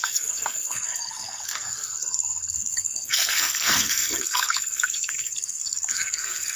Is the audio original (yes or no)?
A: no